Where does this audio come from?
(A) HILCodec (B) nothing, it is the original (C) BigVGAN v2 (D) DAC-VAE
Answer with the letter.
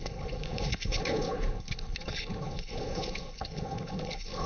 A